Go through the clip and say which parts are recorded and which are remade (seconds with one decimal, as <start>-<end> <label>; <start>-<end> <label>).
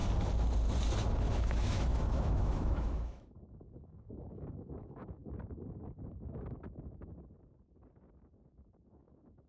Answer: 0.0-1.2 recorded; 1.2-5.2 remade; 5.2-8.9 recorded; 8.9-9.5 remade